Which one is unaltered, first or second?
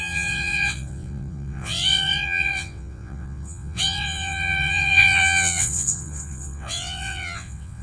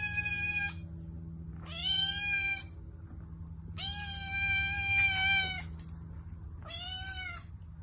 second